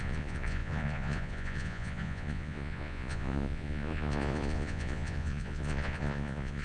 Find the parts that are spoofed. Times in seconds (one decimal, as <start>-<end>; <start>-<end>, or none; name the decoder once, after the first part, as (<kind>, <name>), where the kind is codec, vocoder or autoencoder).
0.0-6.6 (vocoder, Vocos)